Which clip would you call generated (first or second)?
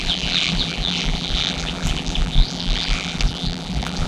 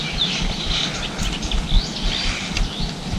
first